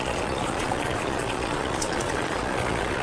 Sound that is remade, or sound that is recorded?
remade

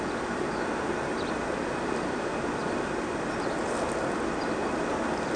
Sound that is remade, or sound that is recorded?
recorded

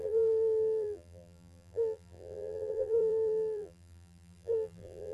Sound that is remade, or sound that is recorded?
remade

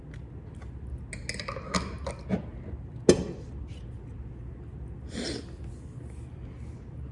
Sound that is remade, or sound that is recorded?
recorded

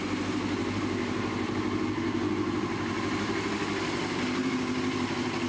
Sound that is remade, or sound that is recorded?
recorded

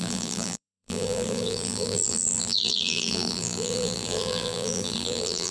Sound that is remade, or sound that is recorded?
remade